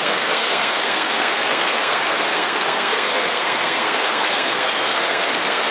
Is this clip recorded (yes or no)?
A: no